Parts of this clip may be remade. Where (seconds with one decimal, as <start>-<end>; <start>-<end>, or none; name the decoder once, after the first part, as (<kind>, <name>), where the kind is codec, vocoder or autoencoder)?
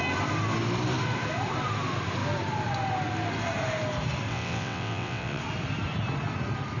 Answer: 4.3-5.4 (vocoder, WaveNeXt)